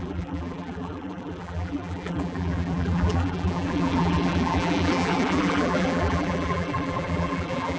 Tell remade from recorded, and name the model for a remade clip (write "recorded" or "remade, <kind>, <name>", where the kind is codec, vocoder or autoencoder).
remade, vocoder, BigVGAN v2